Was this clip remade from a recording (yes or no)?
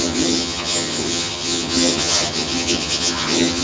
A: yes